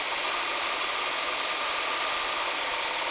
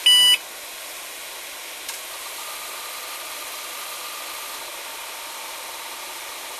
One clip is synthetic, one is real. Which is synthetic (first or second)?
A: first